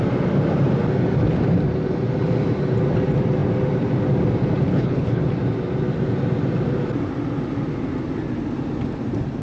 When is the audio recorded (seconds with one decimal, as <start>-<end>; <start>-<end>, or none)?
0.0-4.7; 5.2-9.4